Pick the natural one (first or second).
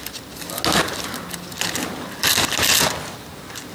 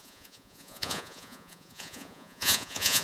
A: first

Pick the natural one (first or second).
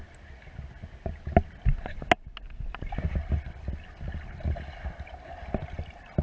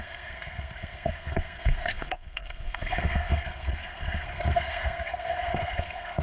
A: first